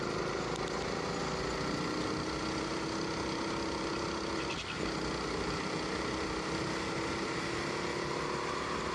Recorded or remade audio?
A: recorded